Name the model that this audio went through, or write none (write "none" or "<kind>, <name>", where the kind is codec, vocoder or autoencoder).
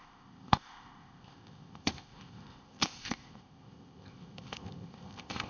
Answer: codec, ZipCodec